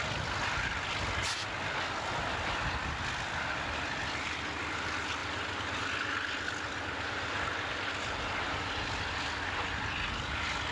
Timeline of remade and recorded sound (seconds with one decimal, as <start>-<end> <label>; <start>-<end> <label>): 0.0-10.7 recorded